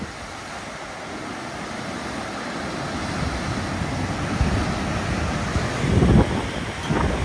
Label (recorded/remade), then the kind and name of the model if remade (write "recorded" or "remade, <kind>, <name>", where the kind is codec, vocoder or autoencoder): recorded